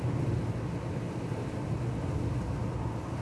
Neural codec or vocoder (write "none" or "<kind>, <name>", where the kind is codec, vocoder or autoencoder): none